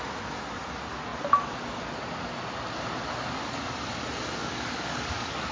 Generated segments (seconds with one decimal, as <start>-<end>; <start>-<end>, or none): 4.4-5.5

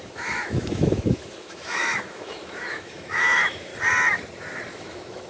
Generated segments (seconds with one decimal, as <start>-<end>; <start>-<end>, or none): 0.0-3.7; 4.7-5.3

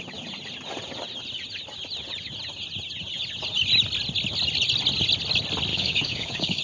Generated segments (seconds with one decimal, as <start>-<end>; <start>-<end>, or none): 5.7-6.6